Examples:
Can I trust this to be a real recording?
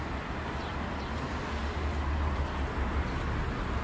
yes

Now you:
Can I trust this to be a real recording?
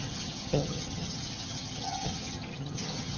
no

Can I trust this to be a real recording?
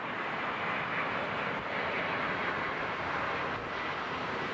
yes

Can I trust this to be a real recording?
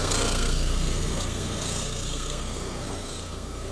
no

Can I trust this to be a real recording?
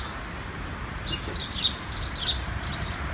yes